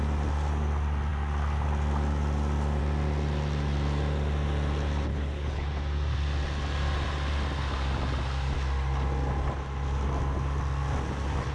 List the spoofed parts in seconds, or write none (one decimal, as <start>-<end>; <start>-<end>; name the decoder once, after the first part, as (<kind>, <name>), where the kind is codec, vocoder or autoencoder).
5.1-5.7 (codec, HILCodec)